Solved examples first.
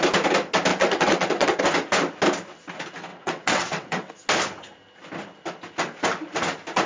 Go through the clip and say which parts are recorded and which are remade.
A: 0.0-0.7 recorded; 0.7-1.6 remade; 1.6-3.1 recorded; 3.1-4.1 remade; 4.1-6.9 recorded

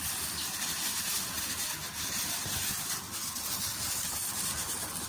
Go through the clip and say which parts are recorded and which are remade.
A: 0.0-5.1 recorded

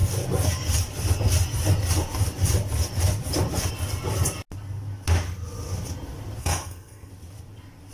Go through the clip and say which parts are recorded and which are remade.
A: 0.0-6.4 recorded; 6.4-7.1 remade; 7.1-7.9 recorded

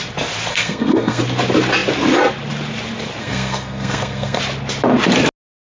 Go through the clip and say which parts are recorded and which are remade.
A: 0.0-0.5 recorded; 0.5-1.2 remade; 1.2-3.2 recorded; 3.2-4.4 remade; 4.4-5.7 recorded

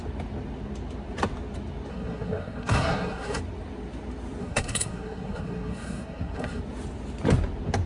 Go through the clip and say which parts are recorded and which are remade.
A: 0.0-1.9 recorded; 1.9-3.4 remade; 3.4-4.4 recorded; 4.4-6.6 remade; 6.6-7.9 recorded

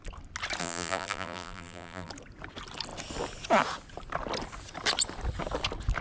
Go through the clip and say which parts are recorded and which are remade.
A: 0.0-0.6 recorded; 0.6-2.1 remade; 2.1-6.0 recorded